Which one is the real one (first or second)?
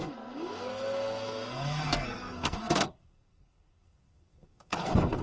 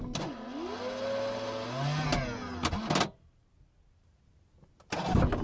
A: second